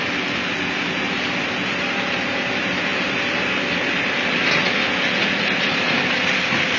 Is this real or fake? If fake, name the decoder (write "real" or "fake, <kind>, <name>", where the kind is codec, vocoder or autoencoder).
real